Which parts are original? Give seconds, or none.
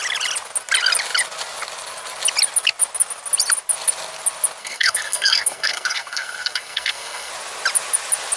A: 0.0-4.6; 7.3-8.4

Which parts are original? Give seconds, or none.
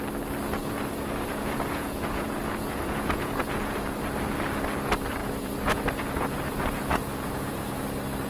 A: 0.0-0.6; 4.0-5.2; 7.8-8.3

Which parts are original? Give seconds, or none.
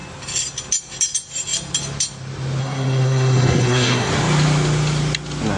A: 0.0-2.6; 4.1-5.6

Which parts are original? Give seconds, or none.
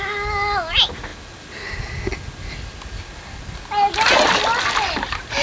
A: 0.0-5.4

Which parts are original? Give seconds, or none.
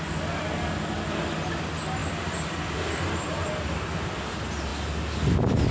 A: 0.0-2.0; 3.5-5.7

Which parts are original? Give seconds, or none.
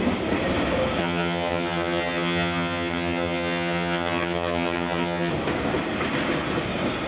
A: 0.0-1.0; 5.3-7.1